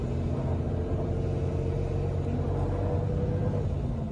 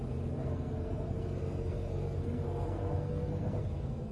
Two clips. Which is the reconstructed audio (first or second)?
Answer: second